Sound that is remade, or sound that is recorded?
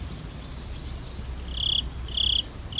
recorded